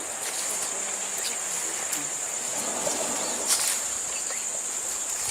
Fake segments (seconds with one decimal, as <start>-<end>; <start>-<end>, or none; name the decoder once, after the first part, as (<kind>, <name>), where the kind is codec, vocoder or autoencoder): 2.7-4.4 (vocoder, BigVGAN v2)